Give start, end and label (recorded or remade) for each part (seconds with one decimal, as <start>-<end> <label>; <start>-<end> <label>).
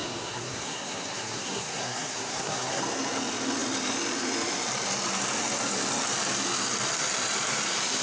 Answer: 0.0-2.8 remade; 2.8-8.0 recorded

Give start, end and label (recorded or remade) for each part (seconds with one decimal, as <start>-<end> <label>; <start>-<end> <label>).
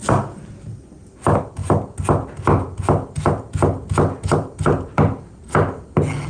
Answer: 0.0-6.3 recorded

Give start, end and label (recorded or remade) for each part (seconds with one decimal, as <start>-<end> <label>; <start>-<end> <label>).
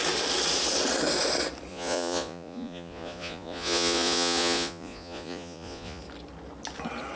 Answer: 0.0-1.7 recorded; 1.7-6.0 remade; 6.0-7.2 recorded